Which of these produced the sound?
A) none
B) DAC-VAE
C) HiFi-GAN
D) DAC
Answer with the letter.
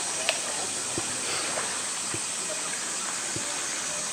A